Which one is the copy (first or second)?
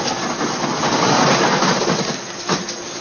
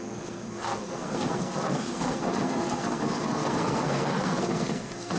second